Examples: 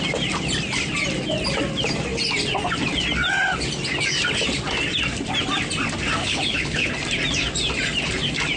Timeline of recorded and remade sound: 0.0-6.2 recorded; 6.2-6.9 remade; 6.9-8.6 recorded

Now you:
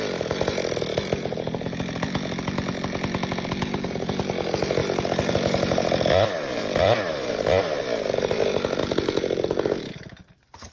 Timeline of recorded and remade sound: 0.0-4.8 recorded; 4.8-5.3 remade; 5.3-6.6 recorded; 6.6-7.3 remade; 7.3-8.8 recorded; 8.8-9.6 remade; 9.6-10.7 recorded

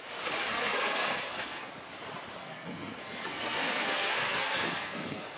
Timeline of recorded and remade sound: 0.0-0.4 recorded; 0.4-1.7 remade; 1.7-2.4 recorded; 2.4-5.4 remade

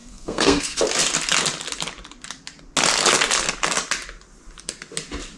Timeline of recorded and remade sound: 0.0-0.8 remade; 0.8-5.4 recorded

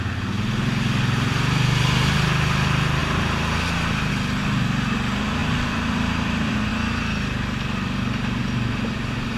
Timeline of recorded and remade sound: 0.0-5.4 recorded; 5.4-6.7 remade; 6.7-9.4 recorded